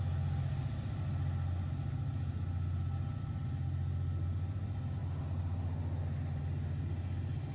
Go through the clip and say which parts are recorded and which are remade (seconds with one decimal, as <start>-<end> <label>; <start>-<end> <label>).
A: 0.0-7.5 recorded